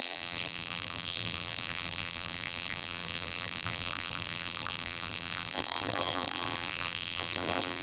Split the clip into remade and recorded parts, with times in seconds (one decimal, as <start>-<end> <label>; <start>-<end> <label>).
0.0-7.8 remade